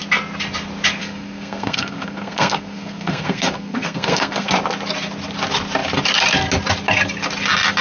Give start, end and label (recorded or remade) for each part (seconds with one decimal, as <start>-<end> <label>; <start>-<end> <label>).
0.0-1.0 recorded; 1.0-4.5 remade; 4.5-7.8 recorded